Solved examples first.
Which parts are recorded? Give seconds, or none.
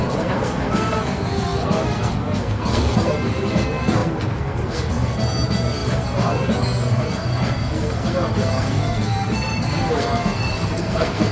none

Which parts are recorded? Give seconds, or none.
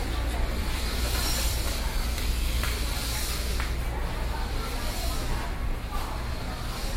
0.0-0.6; 3.2-7.0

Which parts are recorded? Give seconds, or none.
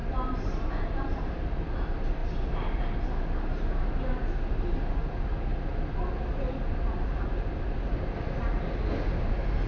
0.6-9.7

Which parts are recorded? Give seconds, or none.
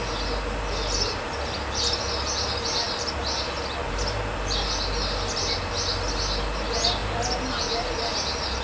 0.0-8.6